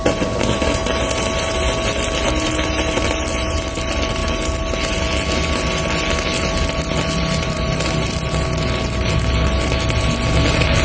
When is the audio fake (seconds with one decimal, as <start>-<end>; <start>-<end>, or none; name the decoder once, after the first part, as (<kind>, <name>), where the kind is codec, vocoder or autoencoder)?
none